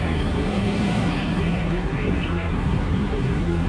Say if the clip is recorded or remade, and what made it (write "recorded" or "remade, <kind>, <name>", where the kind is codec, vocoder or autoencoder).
remade, codec, SNAC